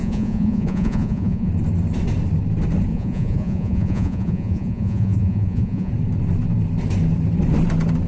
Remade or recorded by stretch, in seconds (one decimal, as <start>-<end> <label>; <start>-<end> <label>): 0.0-1.5 remade; 1.5-2.9 recorded; 2.9-5.9 remade; 5.9-8.1 recorded